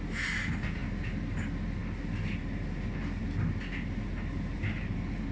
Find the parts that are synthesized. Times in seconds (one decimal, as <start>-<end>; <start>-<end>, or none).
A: none